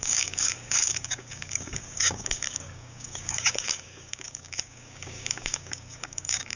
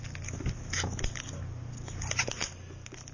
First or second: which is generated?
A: first